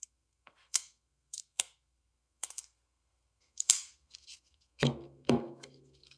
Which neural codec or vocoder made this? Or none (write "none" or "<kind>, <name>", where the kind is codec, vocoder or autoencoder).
codec, SNAC